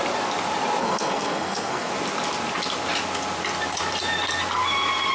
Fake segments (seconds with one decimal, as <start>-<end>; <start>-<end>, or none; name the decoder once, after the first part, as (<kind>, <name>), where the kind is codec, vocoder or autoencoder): 0.8-1.9 (codec, SNAC)